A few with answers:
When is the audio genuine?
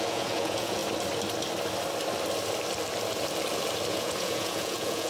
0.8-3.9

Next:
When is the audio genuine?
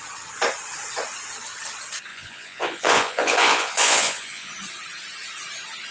0.0-2.1; 4.5-5.9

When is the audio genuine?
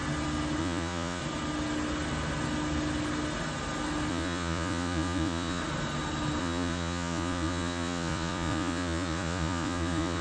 0.0-0.6; 1.2-4.1; 5.6-6.4